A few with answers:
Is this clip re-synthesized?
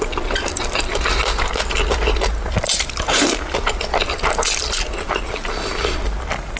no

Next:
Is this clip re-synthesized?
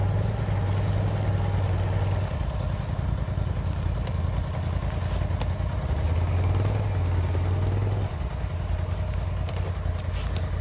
no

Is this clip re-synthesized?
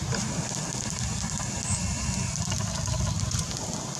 no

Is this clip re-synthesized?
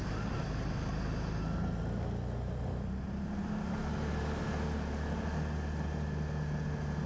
no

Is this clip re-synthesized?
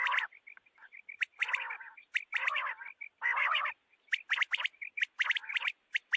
no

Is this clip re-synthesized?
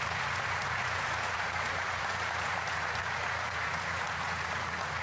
yes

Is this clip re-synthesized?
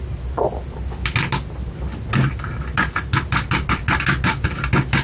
no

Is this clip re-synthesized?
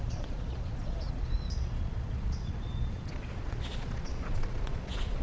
yes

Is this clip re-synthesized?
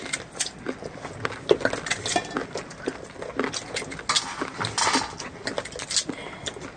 no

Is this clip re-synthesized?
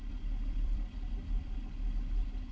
yes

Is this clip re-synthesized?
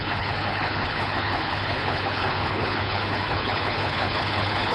yes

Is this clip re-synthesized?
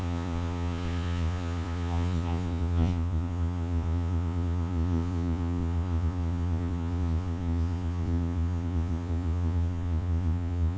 yes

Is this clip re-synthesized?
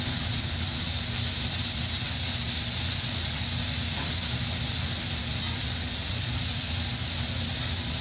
no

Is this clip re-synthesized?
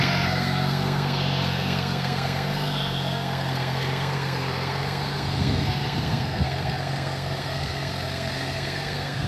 yes